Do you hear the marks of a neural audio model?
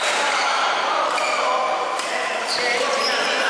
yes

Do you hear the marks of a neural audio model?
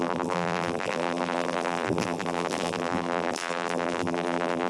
yes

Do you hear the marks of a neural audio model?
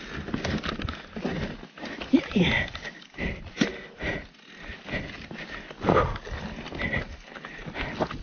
no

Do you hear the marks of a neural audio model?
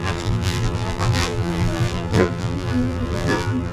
yes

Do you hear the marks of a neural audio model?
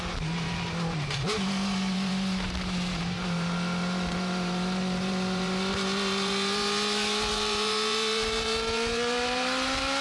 yes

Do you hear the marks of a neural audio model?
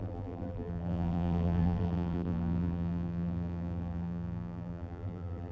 yes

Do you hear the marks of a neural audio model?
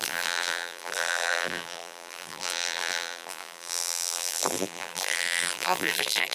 yes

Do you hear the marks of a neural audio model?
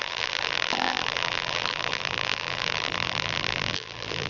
yes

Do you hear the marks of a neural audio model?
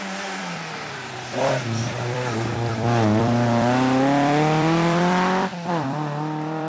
yes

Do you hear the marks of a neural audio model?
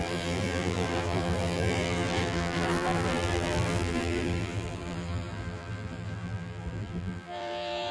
yes